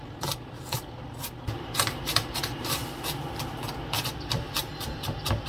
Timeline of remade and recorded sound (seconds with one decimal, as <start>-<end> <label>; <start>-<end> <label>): 0.0-2.8 remade; 2.8-4.3 recorded; 4.3-5.5 remade